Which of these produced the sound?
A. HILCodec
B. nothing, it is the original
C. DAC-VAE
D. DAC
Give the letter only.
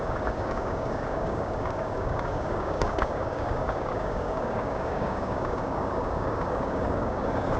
D